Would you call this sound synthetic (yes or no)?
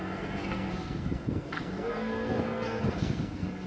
yes